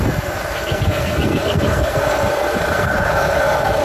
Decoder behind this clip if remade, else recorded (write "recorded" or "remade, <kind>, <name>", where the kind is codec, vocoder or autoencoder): remade, codec, SNAC